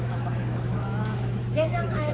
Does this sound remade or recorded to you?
remade